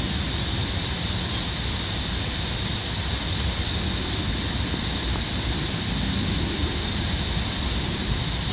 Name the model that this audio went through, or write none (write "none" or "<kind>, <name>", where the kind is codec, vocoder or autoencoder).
none